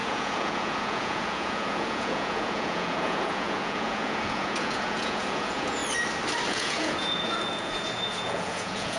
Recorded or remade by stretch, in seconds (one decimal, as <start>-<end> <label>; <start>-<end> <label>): 0.0-5.8 remade; 5.8-6.5 recorded; 6.5-9.0 remade